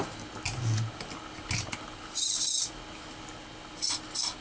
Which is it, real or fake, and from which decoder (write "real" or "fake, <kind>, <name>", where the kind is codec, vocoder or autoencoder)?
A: real